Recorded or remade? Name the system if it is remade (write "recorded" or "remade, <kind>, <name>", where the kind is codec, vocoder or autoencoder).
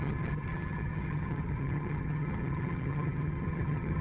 remade, vocoder, HiFi-GAN